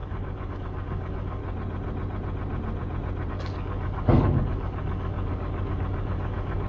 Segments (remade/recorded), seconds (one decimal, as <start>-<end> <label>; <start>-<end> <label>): 0.0-1.4 remade; 1.4-3.3 recorded; 3.3-6.7 remade

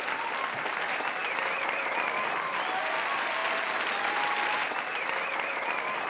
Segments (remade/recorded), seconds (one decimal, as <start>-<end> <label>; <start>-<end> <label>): 0.0-6.1 recorded

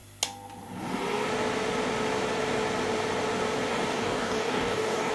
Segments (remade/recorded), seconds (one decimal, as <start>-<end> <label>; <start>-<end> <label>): 0.0-3.7 recorded; 3.7-5.1 remade

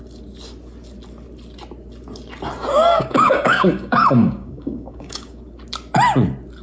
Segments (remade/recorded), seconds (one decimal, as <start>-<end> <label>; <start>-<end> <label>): 0.0-2.9 recorded; 2.9-5.4 remade; 5.4-6.6 recorded

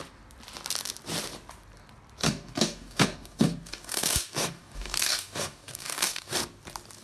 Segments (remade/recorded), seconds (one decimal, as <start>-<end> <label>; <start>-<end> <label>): 0.0-2.2 recorded; 2.2-6.4 remade; 6.4-7.0 recorded

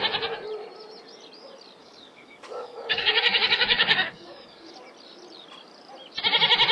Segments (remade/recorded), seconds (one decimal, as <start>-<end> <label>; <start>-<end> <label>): 0.0-1.8 recorded; 1.8-4.7 remade; 4.7-6.7 recorded